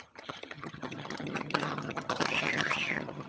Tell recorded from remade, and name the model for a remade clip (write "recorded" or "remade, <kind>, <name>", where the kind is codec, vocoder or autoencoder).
remade, vocoder, HiFi-GAN